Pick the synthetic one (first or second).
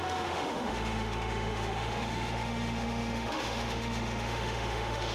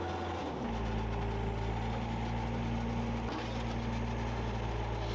first